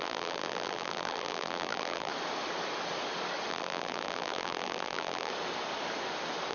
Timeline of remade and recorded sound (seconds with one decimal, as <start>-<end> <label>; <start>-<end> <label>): 0.0-2.1 remade; 2.1-3.5 recorded; 3.5-5.3 remade; 5.3-6.5 recorded